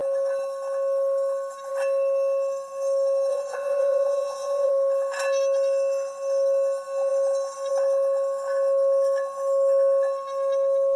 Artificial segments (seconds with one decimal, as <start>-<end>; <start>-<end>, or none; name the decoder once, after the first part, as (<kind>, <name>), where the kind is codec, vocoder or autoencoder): 3.3-4.7 (vocoder, Vocos)